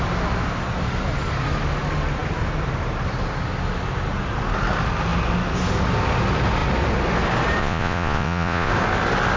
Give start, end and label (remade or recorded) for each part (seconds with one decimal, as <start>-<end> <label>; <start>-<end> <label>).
0.0-7.6 recorded; 7.6-8.7 remade; 8.7-9.4 recorded